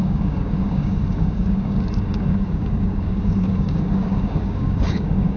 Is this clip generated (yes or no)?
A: yes